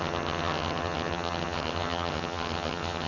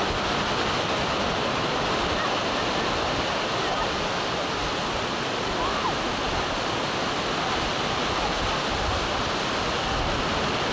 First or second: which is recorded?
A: second